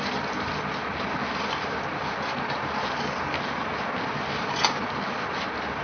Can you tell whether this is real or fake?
real